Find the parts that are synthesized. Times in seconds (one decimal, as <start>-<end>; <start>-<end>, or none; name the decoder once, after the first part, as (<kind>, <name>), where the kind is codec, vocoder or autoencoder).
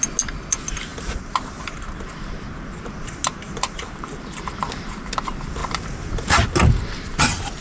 3.3-4.5 (vocoder, BigVGAN v2); 5.6-6.1